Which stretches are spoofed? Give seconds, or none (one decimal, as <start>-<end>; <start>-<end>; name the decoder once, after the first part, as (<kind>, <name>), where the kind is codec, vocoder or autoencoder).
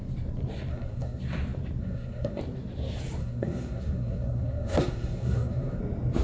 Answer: 0.7-1.2 (codec, SNAC); 1.8-2.4; 3.2-5.8